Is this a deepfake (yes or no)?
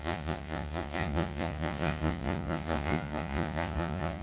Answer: yes